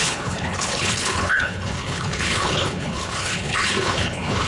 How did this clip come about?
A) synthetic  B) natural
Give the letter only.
A